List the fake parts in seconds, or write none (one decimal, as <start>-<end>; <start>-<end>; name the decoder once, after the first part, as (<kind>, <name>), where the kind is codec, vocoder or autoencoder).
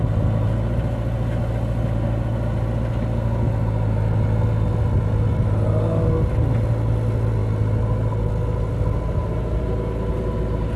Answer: none